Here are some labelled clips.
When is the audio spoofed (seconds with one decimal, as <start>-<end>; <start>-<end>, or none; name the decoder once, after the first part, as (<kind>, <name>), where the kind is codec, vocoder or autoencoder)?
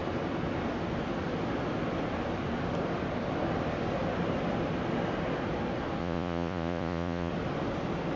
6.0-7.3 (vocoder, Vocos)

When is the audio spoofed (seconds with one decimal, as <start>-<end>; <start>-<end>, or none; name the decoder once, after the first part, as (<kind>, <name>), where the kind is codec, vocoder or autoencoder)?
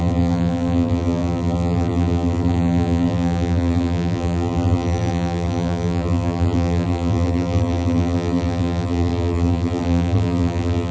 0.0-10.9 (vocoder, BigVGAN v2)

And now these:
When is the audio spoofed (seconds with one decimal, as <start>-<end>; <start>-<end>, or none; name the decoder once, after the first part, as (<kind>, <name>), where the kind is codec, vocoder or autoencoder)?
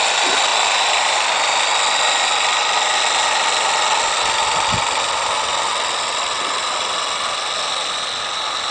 none